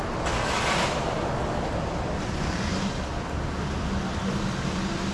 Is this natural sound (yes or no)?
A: yes